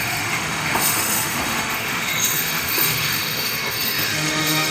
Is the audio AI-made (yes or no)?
yes